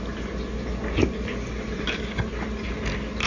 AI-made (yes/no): no